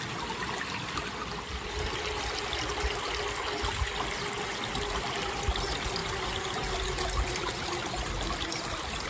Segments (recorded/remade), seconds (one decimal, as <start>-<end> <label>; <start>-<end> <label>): 0.0-9.1 recorded